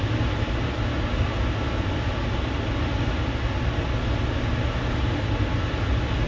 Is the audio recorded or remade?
recorded